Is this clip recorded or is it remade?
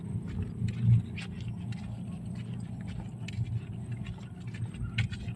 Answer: recorded